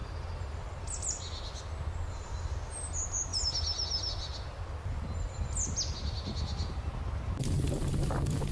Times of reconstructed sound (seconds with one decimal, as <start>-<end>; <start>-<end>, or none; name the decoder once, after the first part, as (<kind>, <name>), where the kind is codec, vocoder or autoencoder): none